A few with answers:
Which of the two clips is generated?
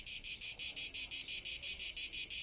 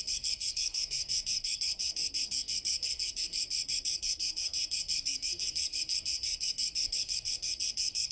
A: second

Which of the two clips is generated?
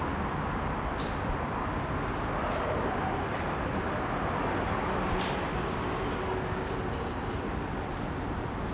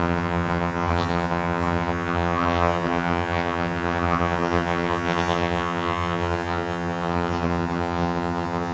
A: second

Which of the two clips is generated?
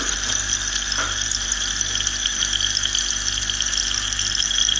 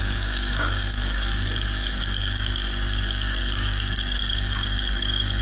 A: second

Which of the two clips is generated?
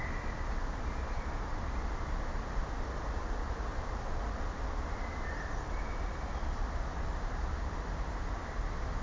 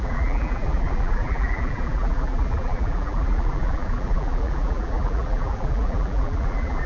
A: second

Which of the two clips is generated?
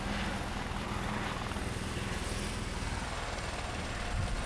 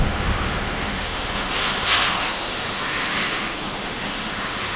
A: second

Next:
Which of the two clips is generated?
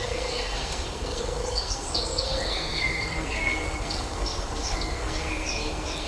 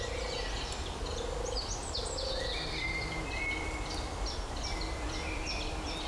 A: first